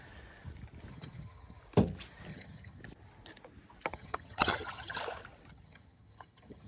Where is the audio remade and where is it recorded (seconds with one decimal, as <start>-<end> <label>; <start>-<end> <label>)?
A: 0.0-0.9 recorded; 0.9-1.6 remade; 1.6-2.3 recorded; 2.3-2.8 remade; 2.8-3.9 recorded; 3.9-5.0 remade; 5.0-5.5 recorded; 5.5-6.7 remade